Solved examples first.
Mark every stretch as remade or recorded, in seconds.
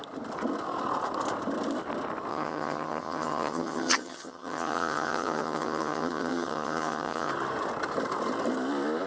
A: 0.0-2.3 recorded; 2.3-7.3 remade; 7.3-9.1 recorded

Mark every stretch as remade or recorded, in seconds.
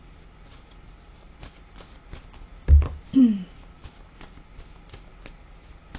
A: 0.0-6.0 recorded